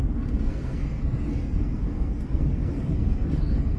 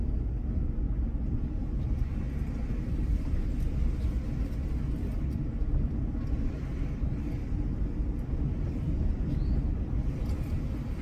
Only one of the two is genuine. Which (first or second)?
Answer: second